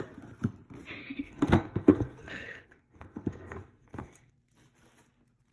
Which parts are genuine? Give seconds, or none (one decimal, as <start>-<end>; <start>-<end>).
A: 0.0-1.0; 4.3-5.5